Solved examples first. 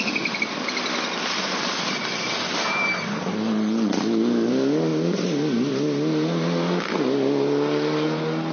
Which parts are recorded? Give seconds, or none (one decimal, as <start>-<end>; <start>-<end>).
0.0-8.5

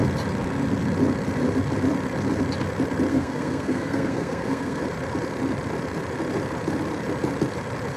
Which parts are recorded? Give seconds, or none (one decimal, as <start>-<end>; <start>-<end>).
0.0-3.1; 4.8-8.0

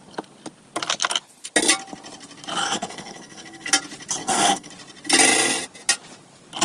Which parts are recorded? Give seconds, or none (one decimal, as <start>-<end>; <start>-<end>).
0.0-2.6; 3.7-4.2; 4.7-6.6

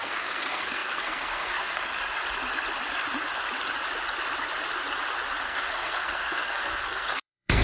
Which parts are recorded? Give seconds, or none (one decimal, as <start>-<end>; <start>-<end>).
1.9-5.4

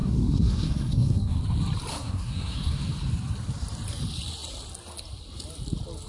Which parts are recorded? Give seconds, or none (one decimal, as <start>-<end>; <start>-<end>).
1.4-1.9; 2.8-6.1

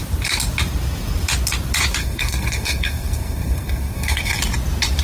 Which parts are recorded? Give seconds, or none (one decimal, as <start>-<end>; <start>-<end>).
0.0-2.0; 4.4-5.0